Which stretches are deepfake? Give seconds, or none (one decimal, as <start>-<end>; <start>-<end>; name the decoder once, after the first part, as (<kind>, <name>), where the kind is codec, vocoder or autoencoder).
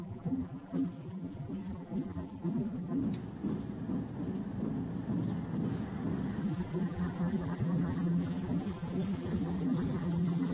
0.0-3.0 (vocoder, BigVGAN v2); 6.4-10.5